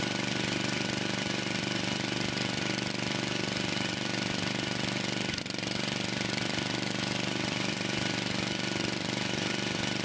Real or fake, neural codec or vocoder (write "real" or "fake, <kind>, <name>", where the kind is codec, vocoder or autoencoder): fake, vocoder, BigVGAN v2